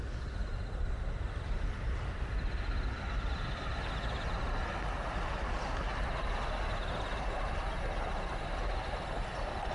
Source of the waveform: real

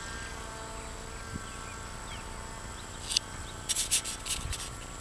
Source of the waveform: real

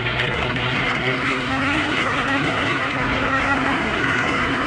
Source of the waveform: fake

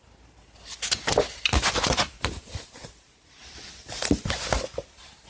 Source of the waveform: real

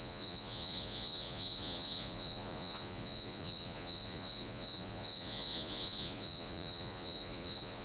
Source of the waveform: fake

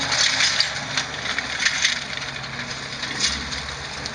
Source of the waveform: real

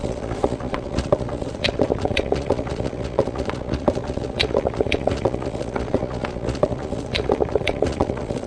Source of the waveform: fake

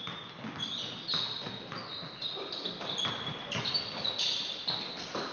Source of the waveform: real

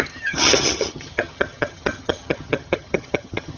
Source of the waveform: fake